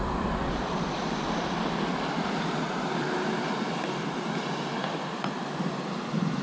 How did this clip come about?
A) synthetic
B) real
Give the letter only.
A